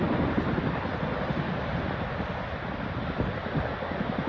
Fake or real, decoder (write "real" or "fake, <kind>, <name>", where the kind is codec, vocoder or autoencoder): real